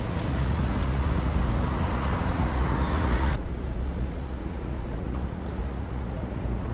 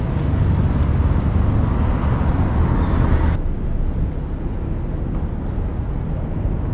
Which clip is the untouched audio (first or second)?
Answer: second